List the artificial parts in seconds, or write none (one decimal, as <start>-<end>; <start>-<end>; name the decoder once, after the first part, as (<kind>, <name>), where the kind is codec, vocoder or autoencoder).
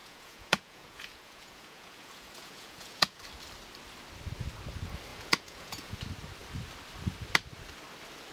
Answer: 0.0-3.2 (vocoder, Vocos); 5.1-6.0